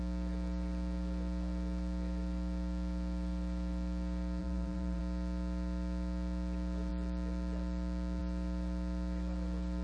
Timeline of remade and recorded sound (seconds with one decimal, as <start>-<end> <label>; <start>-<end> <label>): 0.0-4.4 recorded; 4.4-5.0 remade; 5.0-9.8 recorded